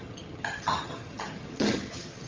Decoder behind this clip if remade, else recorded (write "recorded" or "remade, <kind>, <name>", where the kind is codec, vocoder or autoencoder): remade, vocoder, HiFi-GAN